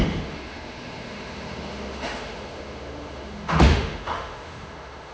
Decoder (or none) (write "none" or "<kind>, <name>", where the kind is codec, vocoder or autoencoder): autoencoder, DAC-VAE